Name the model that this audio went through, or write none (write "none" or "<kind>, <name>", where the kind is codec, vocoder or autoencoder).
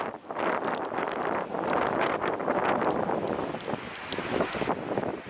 none